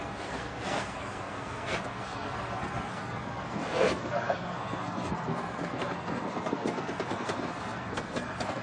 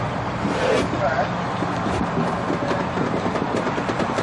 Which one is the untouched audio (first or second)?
second